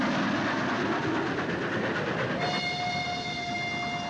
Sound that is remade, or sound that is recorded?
recorded